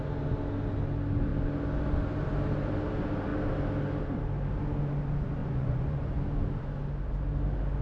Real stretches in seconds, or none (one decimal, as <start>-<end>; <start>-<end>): 0.0-5.4; 6.2-7.8